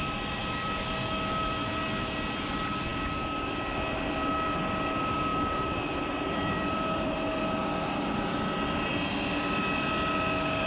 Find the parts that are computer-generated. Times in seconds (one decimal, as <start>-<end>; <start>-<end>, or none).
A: 5.3-7.4